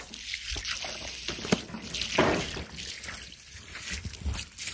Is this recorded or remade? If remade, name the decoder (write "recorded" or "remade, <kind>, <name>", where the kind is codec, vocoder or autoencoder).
recorded